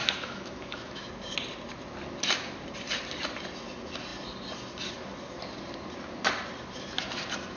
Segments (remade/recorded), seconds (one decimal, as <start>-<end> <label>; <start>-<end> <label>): 0.0-1.1 remade; 1.1-7.6 recorded